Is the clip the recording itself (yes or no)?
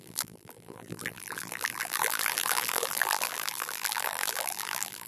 no